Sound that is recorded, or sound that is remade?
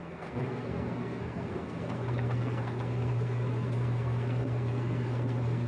remade